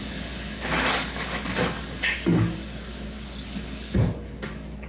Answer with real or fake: fake